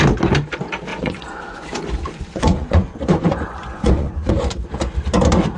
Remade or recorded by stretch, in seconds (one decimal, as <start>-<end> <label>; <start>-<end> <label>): 0.0-0.9 recorded; 0.9-4.3 remade; 4.3-5.6 recorded